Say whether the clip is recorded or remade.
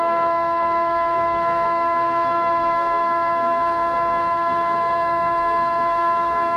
remade